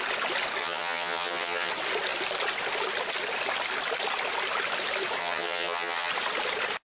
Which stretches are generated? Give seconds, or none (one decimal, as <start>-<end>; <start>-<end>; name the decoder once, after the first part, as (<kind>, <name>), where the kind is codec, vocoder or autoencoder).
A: 0.6-1.7 (vocoder, HiFi-GAN); 5.2-6.1